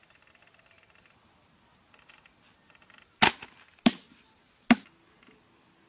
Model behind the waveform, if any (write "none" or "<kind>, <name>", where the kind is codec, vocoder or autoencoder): none